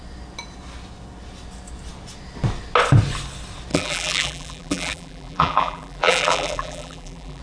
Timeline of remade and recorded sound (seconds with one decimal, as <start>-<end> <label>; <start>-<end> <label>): 0.0-3.7 recorded; 3.7-7.4 remade